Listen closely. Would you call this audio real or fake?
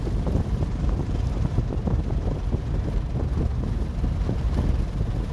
real